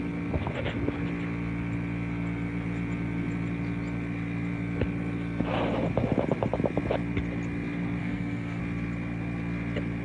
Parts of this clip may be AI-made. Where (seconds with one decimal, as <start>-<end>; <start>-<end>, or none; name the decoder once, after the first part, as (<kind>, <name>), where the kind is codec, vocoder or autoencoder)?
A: 8.0-8.6 (codec, SNAC)